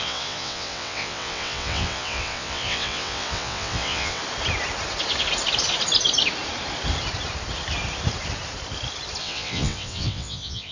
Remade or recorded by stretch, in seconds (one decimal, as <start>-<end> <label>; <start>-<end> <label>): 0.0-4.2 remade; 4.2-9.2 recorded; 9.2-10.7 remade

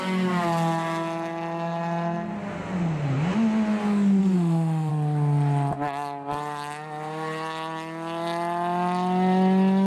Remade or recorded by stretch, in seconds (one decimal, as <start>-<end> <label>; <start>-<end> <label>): 0.0-4.2 recorded; 4.2-4.9 remade; 4.9-9.9 recorded

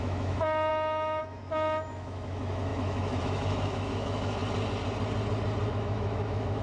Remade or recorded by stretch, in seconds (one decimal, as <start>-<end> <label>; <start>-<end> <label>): 0.0-4.4 remade; 4.4-5.7 recorded; 5.7-6.6 remade